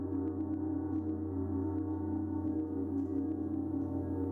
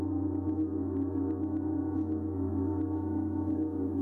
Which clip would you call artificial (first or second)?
second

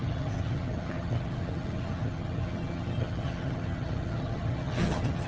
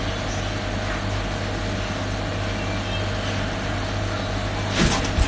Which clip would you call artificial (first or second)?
first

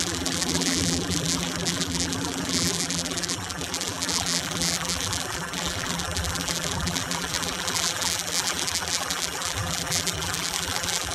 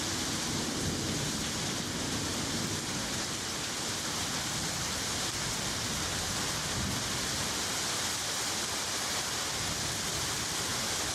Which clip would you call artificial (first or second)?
first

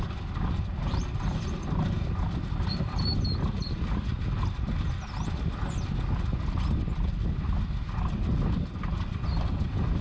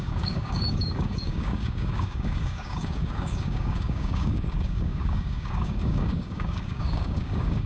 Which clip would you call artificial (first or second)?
second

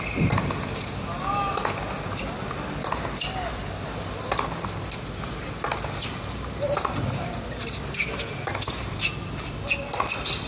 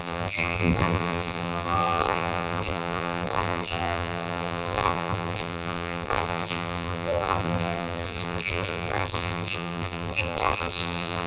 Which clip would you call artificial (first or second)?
second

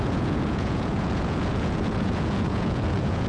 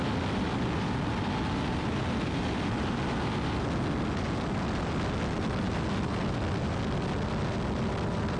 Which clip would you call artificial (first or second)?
first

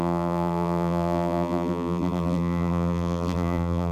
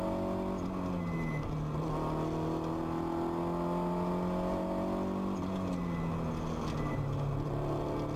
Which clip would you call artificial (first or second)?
first